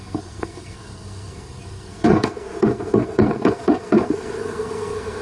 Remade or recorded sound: remade